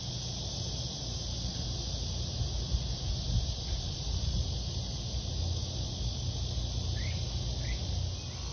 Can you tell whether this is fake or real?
real